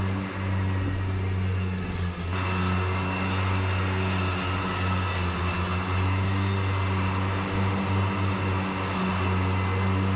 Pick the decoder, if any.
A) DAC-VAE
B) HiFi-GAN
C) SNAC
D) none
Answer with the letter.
D